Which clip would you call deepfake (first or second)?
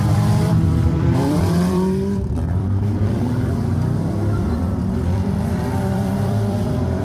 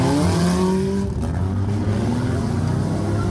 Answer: first